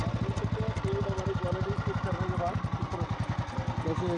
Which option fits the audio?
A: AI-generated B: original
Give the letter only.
B